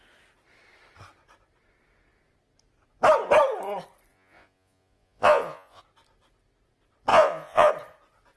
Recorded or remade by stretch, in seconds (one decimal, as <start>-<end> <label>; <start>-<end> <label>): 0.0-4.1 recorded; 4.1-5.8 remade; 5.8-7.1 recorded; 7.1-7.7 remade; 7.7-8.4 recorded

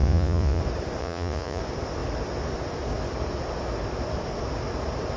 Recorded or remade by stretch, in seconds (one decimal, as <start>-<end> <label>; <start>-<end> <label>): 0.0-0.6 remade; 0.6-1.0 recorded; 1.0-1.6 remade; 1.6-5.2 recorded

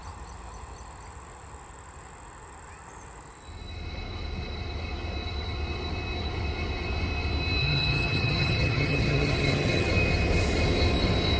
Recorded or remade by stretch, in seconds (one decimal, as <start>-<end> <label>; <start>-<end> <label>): 0.0-7.6 recorded; 7.6-9.9 remade; 9.9-11.4 recorded

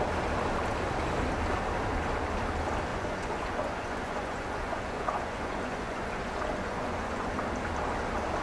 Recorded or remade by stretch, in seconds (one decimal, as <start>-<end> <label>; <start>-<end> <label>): 0.0-2.9 recorded; 2.9-7.3 remade; 7.3-8.4 recorded

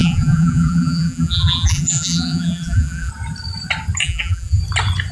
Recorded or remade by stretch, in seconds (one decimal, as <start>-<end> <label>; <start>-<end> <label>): 0.0-3.1 remade; 3.1-4.0 recorded; 4.0-4.6 remade; 4.6-5.1 recorded

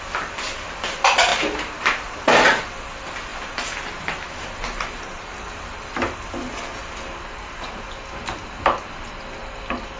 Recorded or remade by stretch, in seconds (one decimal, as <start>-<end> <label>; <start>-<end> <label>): 0.0-1.3 recorded; 1.3-2.6 remade; 2.6-10.0 recorded